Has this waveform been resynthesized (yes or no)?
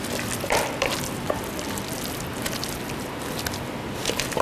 no